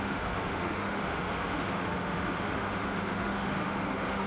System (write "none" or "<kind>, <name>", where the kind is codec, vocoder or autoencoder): autoencoder, DAC-VAE